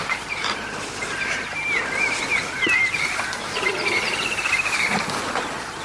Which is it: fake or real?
fake